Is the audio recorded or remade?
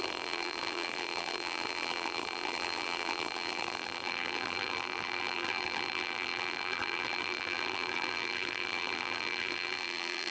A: remade